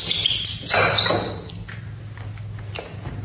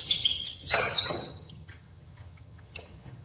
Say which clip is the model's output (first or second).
second